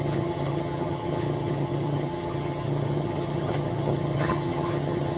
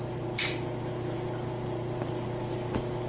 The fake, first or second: first